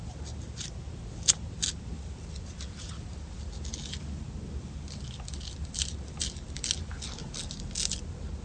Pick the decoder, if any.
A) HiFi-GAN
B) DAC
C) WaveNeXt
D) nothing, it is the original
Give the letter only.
D